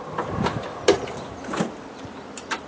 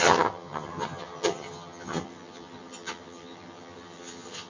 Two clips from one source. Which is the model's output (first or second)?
second